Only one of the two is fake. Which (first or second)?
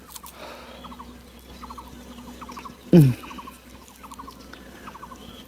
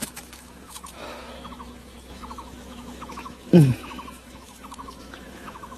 second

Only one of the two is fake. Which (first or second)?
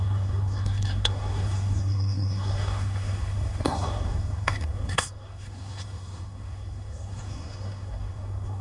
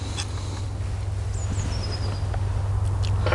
first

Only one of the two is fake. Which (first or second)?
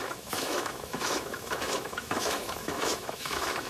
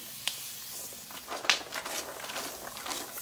first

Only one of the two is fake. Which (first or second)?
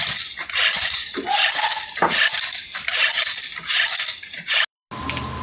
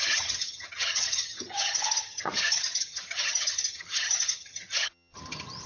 second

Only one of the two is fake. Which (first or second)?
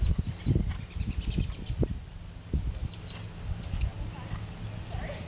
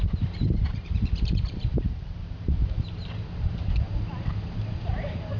second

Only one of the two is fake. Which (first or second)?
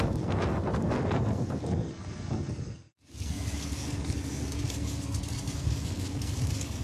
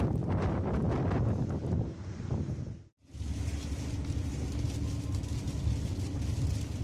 first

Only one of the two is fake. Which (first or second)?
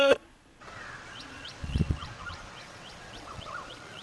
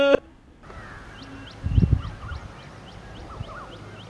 first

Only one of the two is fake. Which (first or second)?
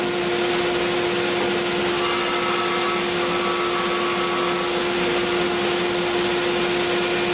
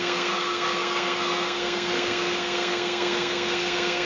second